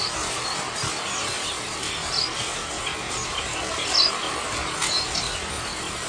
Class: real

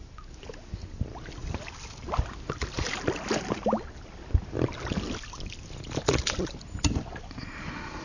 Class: real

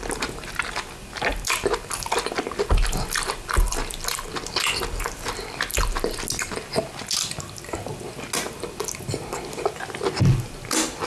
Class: real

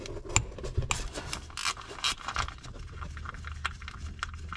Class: real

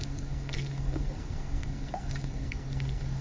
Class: fake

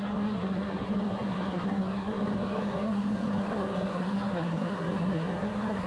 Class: fake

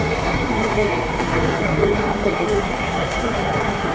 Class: fake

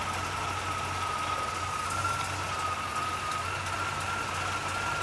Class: real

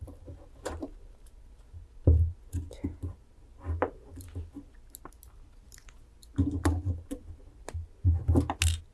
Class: real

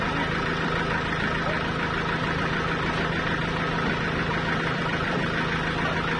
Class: real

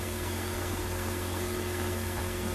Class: fake